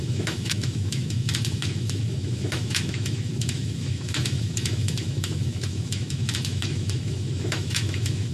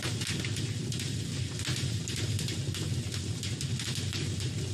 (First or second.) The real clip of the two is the second